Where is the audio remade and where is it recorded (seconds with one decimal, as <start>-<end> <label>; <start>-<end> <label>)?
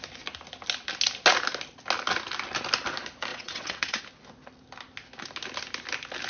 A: 0.0-3.3 recorded; 3.3-4.0 remade; 4.0-6.3 recorded